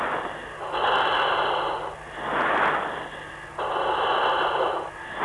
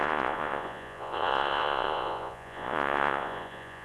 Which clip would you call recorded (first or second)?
first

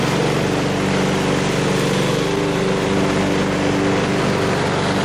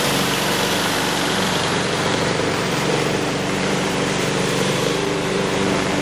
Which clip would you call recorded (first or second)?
first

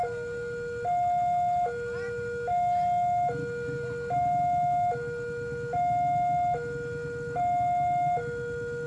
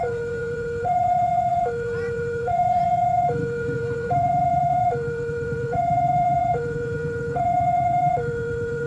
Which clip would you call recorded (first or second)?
first